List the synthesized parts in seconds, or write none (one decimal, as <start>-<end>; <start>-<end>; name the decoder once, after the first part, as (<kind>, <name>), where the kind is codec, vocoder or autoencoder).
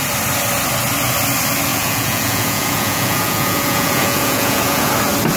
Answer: 1.7-4.9 (vocoder, Vocos)